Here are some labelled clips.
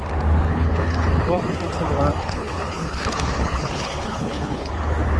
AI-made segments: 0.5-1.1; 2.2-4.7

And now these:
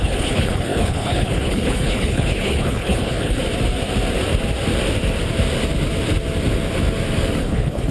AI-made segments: 0.0-3.4; 7.4-7.9

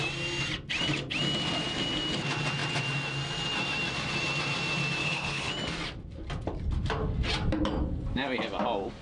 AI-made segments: 5.0-5.5

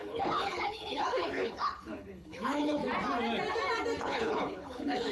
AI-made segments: 0.0-2.8; 4.0-5.1

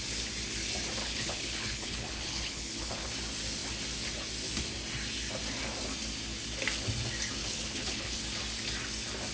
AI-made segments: 1.0-3.1; 7.4-8.2

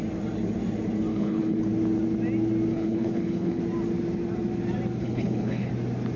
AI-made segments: 1.1-1.6; 2.7-3.6; 5.0-5.7